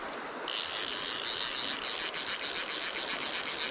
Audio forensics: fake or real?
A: real